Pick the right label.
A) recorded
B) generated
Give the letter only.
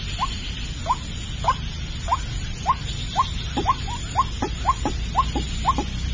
A